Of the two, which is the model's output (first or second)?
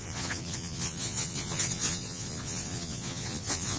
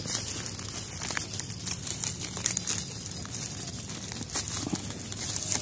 first